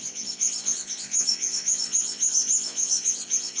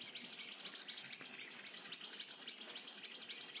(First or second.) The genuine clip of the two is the second